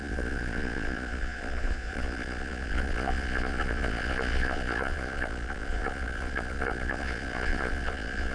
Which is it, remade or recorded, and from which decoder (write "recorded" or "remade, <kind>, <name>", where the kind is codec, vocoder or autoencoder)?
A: remade, vocoder, Vocos